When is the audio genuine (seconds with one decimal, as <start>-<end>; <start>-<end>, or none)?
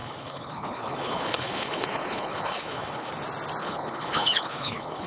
3.1-3.6